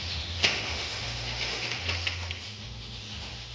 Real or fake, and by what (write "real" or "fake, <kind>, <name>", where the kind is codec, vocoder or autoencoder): fake, autoencoder, DAC-VAE